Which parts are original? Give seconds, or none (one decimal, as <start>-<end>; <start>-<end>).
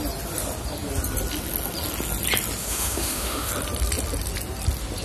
0.0-2.6; 3.5-5.0